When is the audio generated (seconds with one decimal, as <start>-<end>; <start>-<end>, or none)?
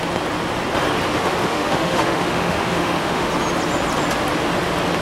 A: 1.4-3.3